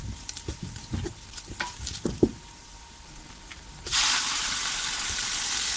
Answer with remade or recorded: remade